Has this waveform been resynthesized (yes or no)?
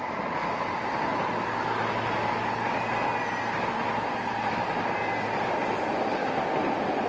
no